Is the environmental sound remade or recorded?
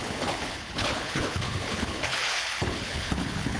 remade